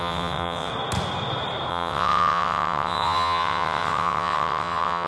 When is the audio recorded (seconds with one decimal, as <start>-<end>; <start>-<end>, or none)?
0.7-1.7